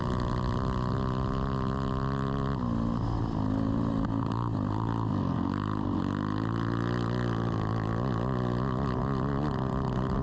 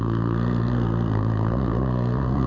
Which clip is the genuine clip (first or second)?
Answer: first